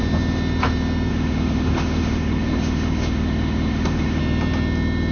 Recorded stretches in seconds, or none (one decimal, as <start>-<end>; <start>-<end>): 0.0-1.1; 4.2-5.1